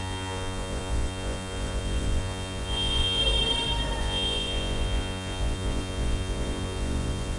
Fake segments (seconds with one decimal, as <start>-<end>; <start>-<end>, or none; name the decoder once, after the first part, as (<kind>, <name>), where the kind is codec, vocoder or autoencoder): 0.0-3.2 (vocoder, Vocos); 4.0-7.4